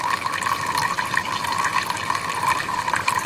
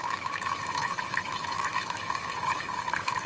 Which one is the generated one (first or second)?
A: second